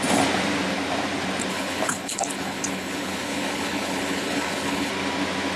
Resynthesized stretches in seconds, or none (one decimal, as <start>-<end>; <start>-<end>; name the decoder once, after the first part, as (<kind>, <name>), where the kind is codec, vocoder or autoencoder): 1.5-4.9 (codec, HILCodec)